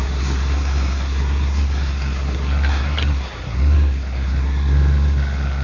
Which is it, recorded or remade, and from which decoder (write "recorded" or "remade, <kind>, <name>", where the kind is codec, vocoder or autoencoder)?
remade, codec, SNAC